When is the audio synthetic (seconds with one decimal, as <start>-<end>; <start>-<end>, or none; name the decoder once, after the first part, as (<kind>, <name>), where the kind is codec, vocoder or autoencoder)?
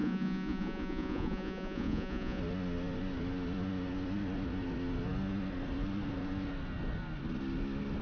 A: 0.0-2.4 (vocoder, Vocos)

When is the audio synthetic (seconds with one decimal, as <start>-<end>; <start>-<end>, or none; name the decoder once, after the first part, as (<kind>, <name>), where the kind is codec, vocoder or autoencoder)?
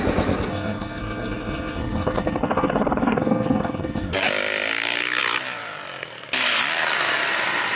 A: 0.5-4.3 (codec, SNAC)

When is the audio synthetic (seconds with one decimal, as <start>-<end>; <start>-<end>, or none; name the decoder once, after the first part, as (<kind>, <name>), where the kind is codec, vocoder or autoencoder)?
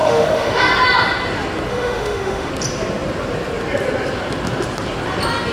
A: 0.0-0.6 (autoencoder, DAC-VAE); 1.7-2.5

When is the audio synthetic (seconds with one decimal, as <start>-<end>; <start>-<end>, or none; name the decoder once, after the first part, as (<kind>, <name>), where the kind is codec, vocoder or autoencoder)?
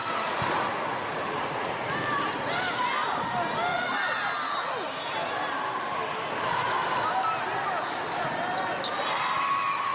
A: 0.0-1.8 (vocoder, Vocos); 3.7-4.3